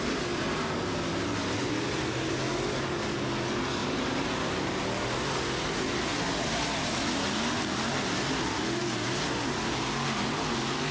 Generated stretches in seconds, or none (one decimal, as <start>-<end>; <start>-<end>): none